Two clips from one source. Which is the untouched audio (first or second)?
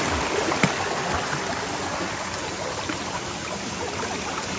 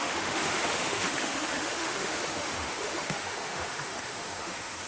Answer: first